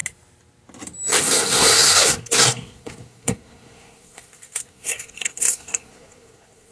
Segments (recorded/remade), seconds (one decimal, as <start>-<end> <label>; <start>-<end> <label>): 0.0-1.2 recorded; 1.2-6.7 remade